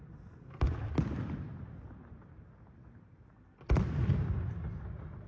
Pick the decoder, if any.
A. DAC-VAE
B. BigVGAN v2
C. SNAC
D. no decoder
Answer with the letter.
D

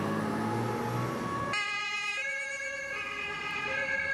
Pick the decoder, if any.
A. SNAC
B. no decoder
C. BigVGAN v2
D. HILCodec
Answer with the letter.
B